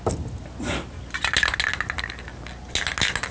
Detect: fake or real real